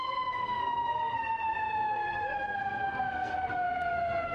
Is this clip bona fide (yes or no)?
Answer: no